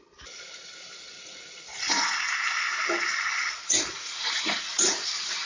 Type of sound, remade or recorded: recorded